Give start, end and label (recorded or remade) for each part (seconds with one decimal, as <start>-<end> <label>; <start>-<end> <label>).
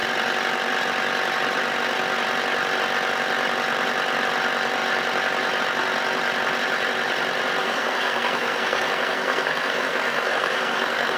0.0-7.6 recorded; 7.6-11.2 remade